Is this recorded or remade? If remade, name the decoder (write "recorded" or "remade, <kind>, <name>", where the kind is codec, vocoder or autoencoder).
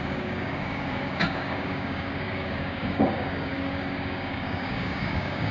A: remade, codec, DAC